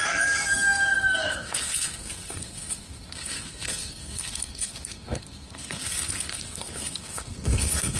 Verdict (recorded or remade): remade